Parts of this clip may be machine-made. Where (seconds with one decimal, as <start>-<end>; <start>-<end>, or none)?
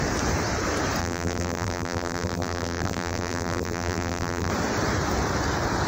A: 1.0-4.5